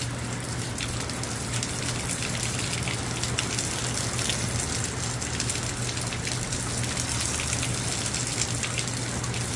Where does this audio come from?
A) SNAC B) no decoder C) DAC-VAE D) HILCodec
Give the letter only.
B